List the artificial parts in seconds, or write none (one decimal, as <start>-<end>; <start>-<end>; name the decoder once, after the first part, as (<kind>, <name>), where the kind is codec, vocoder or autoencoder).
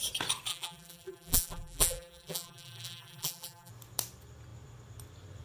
0.5-3.7 (vocoder, BigVGAN v2)